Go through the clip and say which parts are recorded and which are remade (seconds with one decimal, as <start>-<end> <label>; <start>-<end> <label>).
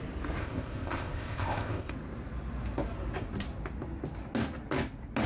0.0-0.4 recorded; 0.4-1.9 remade; 1.9-5.3 recorded